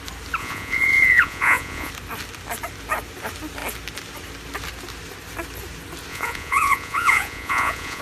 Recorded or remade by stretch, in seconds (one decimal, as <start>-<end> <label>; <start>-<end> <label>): 0.0-0.4 recorded; 0.4-1.9 remade; 1.9-6.1 recorded; 6.1-8.0 remade